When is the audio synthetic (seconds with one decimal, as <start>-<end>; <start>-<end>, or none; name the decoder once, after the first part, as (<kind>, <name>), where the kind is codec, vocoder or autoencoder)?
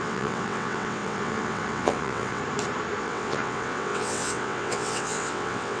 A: 0.0-2.4 (vocoder, WaveNeXt); 3.0-5.8